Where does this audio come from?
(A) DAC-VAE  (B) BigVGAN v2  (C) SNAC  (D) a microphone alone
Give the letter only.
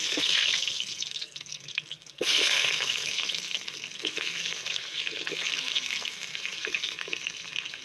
C